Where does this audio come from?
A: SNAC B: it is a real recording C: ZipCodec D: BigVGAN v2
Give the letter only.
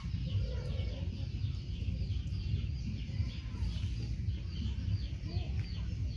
B